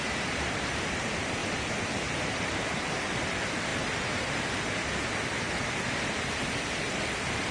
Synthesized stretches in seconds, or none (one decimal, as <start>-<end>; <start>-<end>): 0.0-1.4; 2.2-3.7; 6.8-7.5